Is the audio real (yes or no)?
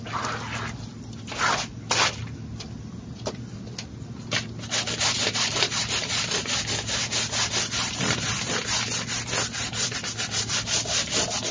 yes